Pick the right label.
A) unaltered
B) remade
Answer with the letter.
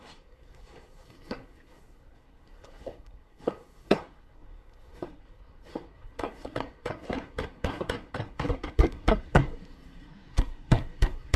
B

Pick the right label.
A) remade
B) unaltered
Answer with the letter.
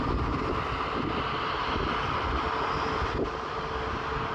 B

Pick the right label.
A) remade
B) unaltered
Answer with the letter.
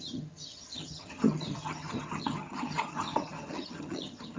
A